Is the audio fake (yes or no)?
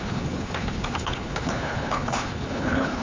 yes